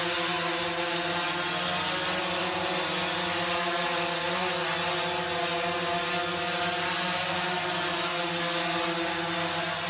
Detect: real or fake real